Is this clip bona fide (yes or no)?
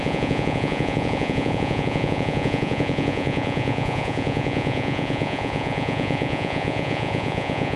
no